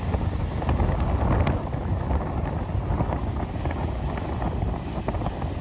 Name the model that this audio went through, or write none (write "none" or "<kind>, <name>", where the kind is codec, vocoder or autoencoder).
none